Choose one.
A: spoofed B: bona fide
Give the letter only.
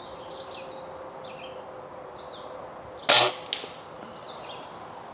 B